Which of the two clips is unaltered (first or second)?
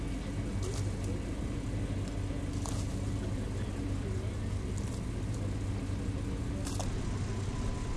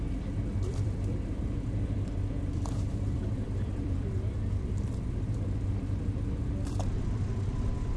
first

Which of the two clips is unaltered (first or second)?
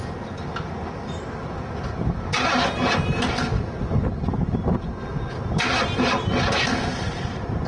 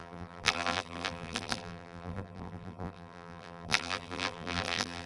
first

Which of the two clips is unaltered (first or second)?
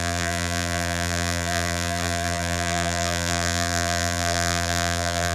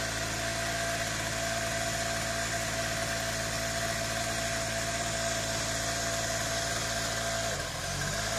second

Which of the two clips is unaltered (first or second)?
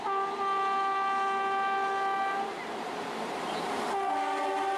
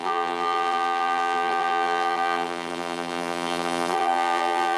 first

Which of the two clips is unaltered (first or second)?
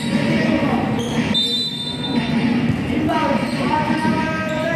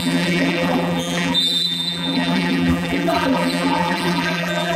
first